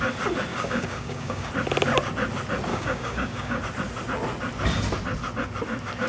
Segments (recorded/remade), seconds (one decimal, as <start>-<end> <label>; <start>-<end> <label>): 0.0-0.5 recorded; 0.5-1.5 remade; 1.5-2.7 recorded; 2.7-3.6 remade; 3.6-6.1 recorded